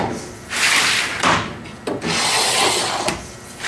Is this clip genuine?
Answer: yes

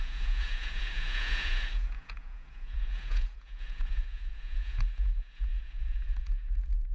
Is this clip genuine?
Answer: no